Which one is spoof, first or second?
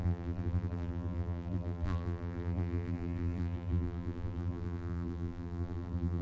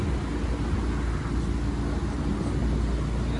first